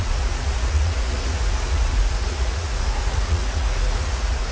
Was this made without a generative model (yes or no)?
no